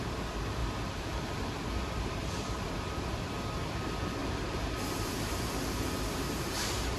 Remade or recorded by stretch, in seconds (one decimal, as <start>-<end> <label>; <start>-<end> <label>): 0.0-0.6 recorded; 0.6-3.2 remade; 3.2-4.2 recorded; 4.2-7.0 remade